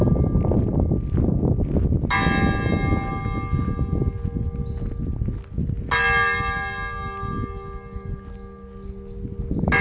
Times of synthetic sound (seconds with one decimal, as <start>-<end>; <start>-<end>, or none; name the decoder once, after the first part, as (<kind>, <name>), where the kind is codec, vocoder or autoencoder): none